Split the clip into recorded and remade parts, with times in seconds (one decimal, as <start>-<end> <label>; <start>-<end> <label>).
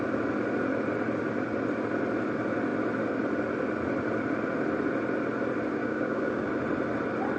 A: 0.0-5.8 recorded; 5.8-6.5 remade; 6.5-7.4 recorded